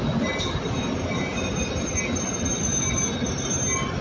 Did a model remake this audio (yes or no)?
no